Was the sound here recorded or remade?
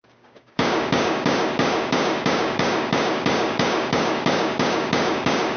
remade